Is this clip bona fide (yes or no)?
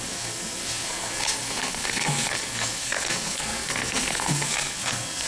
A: no